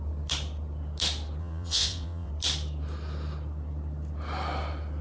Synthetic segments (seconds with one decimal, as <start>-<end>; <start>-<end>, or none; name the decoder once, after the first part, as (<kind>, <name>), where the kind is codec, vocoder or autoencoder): 1.4-2.3 (vocoder, WaveNeXt)